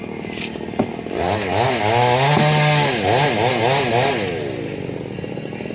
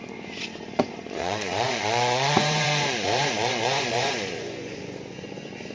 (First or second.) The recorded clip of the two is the first